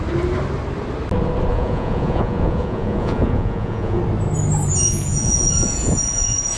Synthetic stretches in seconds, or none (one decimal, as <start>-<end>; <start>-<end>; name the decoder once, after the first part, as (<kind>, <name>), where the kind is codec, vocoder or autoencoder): 1.5-4.0 (vocoder, Vocos); 4.8-6.6